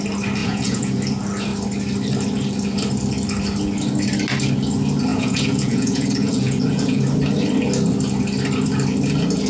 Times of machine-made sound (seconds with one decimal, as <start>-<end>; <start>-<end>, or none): 0.4-1.0; 5.1-7.0